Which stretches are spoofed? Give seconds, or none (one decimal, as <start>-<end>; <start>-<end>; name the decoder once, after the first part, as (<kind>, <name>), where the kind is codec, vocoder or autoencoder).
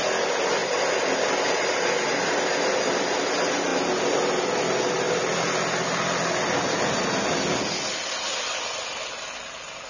none